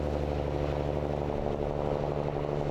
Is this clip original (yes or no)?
yes